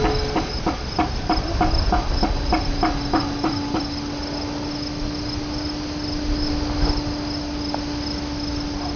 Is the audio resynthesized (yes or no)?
no